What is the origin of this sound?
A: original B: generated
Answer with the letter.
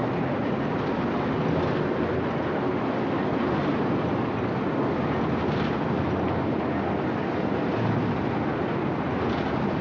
A